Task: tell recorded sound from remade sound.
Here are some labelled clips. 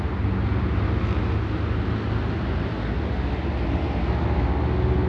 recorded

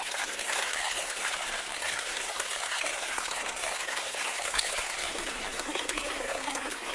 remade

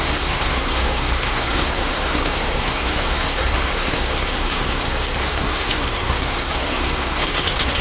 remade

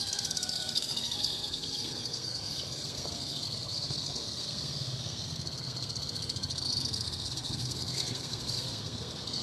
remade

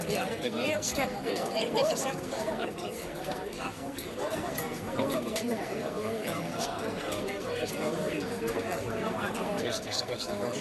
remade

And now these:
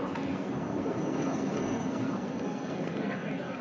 remade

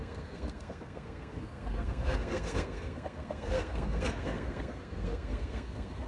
remade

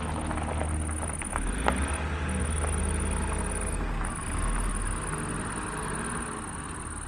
recorded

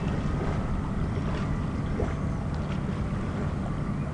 recorded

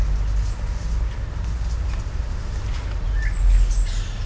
recorded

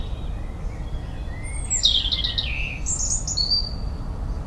recorded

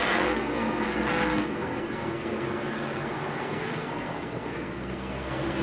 remade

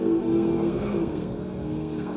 remade